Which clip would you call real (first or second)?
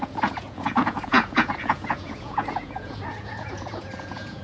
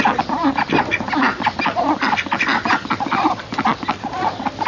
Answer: second